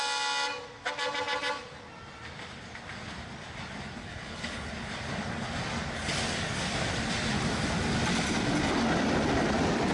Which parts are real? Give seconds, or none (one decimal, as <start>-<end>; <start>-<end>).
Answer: 0.0-4.0; 4.7-9.9